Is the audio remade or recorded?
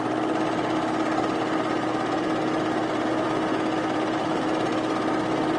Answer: recorded